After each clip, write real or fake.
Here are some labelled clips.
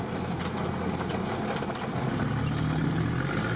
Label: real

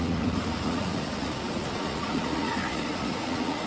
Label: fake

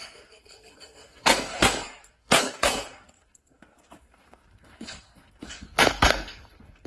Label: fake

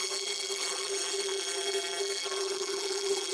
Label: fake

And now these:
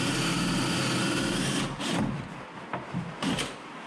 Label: real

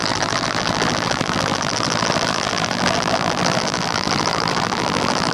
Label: fake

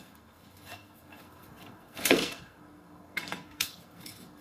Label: fake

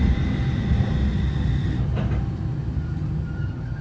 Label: real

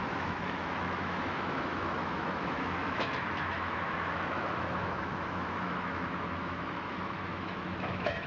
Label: fake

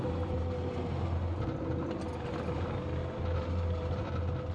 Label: real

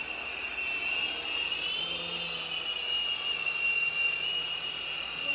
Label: real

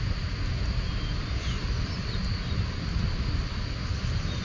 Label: real